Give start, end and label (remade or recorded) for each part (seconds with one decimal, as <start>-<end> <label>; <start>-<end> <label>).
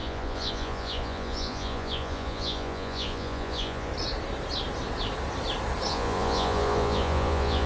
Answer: 0.0-3.9 remade; 3.9-5.9 recorded; 5.9-7.7 remade